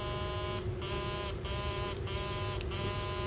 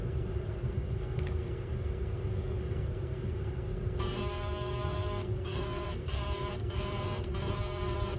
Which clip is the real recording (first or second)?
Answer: first